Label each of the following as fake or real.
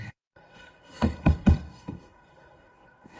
fake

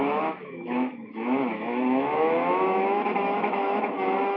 fake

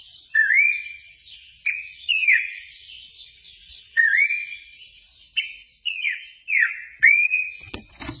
fake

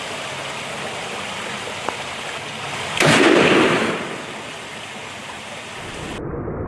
real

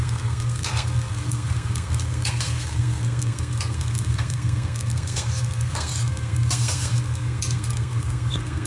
fake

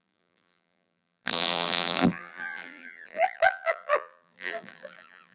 fake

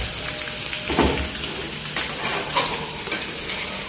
real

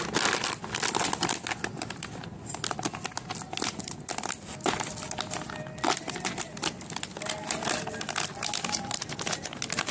real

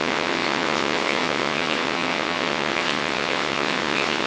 fake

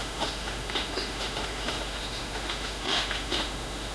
fake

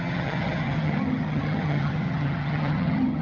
fake